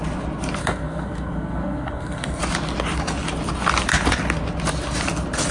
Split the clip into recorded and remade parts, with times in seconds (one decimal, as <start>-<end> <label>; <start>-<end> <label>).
0.0-0.6 recorded; 0.6-2.4 remade; 2.4-5.5 recorded